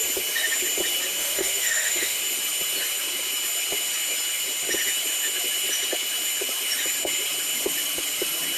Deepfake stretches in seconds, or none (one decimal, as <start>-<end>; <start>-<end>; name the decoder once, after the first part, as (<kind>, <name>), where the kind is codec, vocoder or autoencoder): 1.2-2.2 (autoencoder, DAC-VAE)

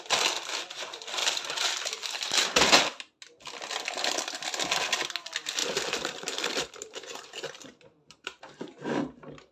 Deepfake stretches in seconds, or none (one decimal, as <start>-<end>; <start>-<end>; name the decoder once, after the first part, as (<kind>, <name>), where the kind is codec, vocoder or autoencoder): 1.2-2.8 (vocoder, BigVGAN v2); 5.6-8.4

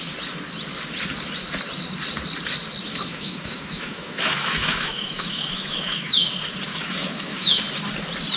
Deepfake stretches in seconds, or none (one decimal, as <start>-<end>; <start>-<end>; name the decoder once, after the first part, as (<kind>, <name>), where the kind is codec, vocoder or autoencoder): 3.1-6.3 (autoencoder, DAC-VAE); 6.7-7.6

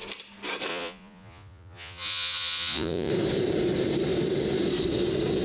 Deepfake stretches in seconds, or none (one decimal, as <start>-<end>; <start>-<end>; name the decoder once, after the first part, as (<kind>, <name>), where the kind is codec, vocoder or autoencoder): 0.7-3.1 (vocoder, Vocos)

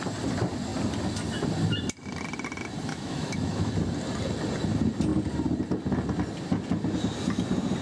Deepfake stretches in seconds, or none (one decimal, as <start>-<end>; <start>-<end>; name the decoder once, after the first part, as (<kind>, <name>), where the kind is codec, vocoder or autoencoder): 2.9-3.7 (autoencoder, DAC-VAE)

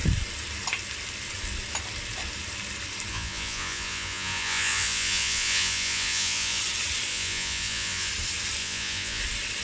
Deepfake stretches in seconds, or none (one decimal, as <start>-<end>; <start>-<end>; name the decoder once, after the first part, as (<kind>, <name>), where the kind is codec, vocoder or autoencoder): 3.1-6.6 (vocoder, Vocos); 7.1-8.1; 8.6-9.2

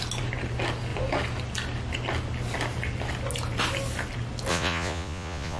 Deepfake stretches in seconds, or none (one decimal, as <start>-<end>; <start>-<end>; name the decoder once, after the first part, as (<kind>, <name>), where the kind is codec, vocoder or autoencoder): 4.5-5.6 (vocoder, Vocos)

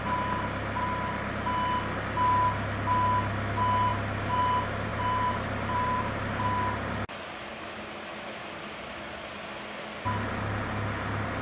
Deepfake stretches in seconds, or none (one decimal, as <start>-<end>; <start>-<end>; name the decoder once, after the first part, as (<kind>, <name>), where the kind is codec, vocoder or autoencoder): 3.9-4.4 (vocoder, BigVGAN v2); 4.9-6.6; 7.5-8.9